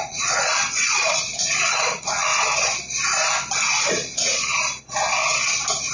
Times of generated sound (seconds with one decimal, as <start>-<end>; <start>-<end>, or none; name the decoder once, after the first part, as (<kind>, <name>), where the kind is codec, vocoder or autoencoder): 0.0-2.3 (vocoder, Vocos); 3.9-4.5

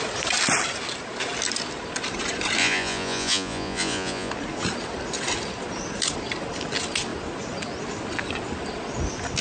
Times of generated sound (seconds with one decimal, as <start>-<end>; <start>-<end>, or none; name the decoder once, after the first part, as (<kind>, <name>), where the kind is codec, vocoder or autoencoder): 2.6-4.3 (vocoder, Vocos)

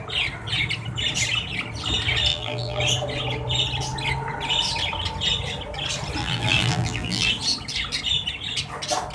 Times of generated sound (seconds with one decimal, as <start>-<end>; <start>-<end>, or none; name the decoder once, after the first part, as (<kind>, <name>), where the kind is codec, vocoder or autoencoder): 2.3-2.8 (vocoder, BigVGAN v2); 6.2-7.3

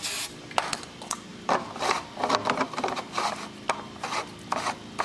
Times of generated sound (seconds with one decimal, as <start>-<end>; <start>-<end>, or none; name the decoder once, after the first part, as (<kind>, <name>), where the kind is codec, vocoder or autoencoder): 1.3-3.3 (vocoder, BigVGAN v2)

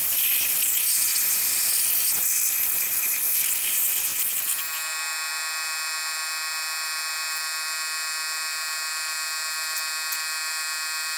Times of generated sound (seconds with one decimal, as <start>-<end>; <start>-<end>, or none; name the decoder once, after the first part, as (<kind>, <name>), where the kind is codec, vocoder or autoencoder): none